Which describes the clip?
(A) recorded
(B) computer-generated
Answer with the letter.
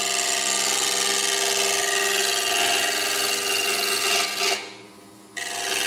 A